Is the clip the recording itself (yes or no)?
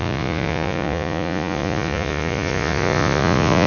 no